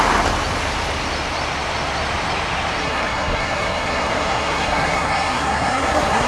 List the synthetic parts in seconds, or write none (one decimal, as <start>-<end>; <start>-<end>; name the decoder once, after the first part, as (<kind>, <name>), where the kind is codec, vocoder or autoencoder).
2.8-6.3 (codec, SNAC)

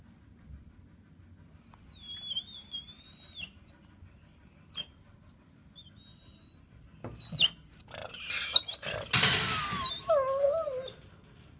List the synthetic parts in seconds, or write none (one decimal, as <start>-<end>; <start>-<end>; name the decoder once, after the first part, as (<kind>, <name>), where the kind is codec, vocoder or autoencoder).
none

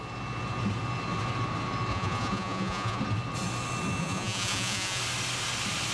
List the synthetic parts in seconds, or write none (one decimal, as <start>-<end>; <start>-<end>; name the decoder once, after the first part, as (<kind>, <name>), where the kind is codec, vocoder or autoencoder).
1.9-3.0 (vocoder, Vocos); 4.0-5.0

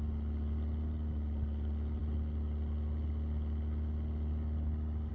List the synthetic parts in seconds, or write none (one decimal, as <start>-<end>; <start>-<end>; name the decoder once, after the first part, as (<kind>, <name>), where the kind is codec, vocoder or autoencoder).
none